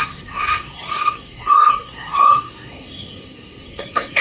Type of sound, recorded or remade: remade